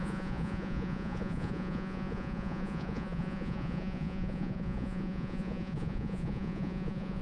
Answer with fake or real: fake